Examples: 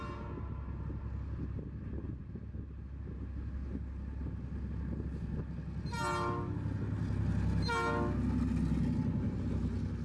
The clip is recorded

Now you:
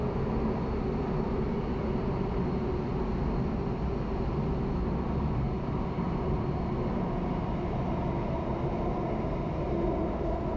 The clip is recorded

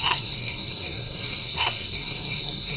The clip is remade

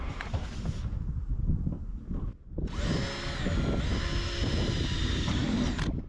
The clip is recorded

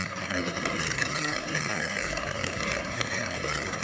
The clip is remade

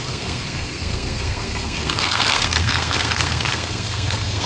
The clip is remade